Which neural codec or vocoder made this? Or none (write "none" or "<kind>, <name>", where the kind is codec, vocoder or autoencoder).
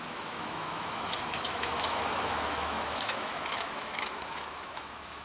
autoencoder, DAC-VAE